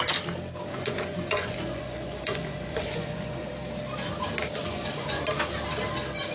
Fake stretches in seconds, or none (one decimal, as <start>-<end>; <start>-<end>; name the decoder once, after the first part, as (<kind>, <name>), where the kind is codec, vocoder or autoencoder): 0.7-3.5 (vocoder, Vocos); 4.6-5.2